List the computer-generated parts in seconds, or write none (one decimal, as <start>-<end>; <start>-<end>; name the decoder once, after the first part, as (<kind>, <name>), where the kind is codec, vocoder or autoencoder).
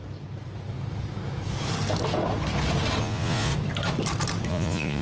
3.0-3.5 (vocoder, Vocos); 4.5-5.0